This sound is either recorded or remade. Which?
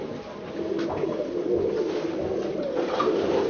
recorded